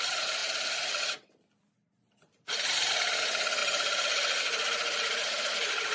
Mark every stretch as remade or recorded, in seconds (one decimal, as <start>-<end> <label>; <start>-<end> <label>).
0.0-0.4 recorded; 0.4-1.0 remade; 1.0-3.6 recorded; 3.6-4.4 remade; 4.4-5.9 recorded